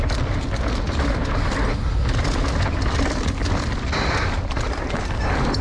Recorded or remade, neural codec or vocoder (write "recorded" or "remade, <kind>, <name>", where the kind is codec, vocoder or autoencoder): recorded